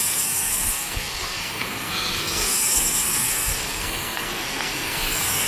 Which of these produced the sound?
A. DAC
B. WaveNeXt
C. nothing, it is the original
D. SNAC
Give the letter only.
D